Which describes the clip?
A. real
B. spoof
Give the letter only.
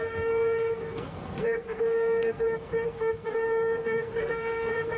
B